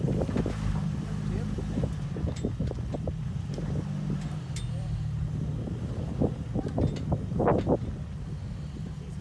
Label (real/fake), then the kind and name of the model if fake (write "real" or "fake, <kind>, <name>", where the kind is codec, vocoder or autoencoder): real